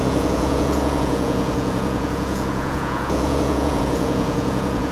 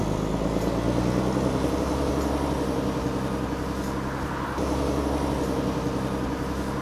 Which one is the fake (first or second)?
first